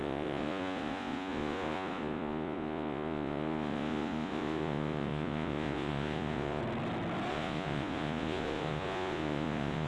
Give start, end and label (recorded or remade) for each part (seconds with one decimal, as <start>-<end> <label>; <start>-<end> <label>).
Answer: 0.0-6.6 remade; 6.6-7.3 recorded; 7.3-9.9 remade